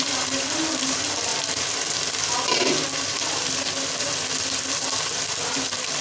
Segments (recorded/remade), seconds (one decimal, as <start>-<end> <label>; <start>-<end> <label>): 0.0-6.0 remade